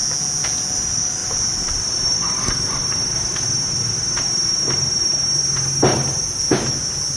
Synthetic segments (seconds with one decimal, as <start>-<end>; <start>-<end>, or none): 0.7-5.4